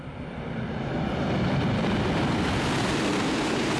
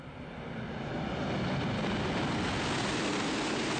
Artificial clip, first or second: first